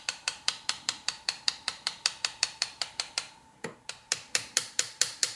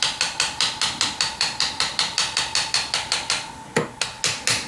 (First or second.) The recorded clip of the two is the second